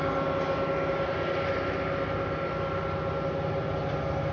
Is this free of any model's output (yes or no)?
yes